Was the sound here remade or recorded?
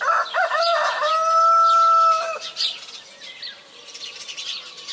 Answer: recorded